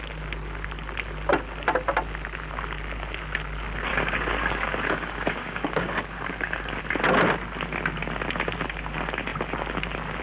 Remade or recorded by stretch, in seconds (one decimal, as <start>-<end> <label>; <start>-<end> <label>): 0.0-3.9 recorded; 3.9-6.8 remade; 6.8-10.2 recorded